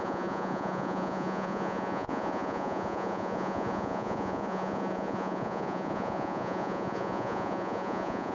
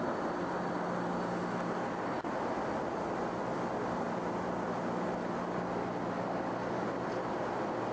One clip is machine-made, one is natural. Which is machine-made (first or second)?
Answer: first